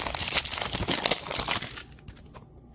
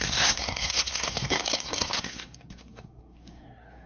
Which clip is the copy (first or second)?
second